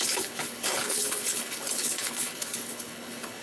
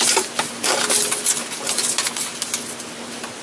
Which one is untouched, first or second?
second